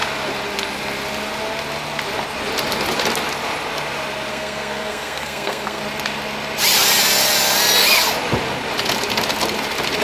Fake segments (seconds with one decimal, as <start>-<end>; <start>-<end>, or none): 4.3-5.8